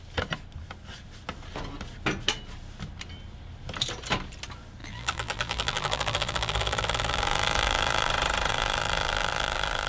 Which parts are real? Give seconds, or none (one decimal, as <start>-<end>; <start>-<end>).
0.0-4.8; 8.1-8.5